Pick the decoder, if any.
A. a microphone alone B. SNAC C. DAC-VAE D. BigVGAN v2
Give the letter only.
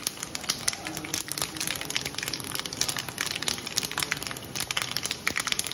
A